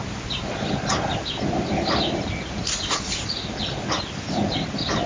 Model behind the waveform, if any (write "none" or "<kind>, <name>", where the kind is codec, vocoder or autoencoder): none